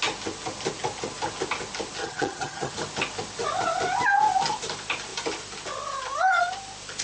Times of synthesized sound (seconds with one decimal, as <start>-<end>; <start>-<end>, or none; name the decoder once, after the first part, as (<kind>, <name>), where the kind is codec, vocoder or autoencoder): 2.0-2.7 (vocoder, HiFi-GAN)